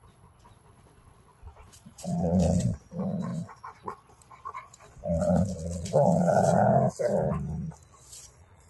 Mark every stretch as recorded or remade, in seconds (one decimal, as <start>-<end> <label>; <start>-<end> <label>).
0.0-6.6 remade; 6.6-7.9 recorded; 7.9-8.7 remade